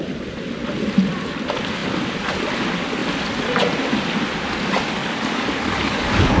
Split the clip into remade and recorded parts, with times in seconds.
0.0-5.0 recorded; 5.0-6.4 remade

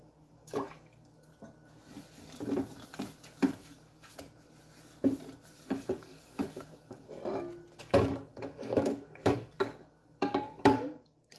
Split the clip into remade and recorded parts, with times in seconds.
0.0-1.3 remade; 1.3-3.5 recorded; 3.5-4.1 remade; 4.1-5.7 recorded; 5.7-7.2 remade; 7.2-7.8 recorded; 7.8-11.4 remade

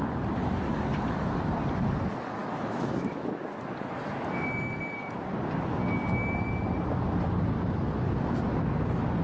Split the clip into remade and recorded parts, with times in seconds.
0.0-2.4 recorded; 2.4-3.3 remade; 3.3-9.2 recorded